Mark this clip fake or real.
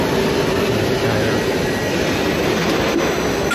real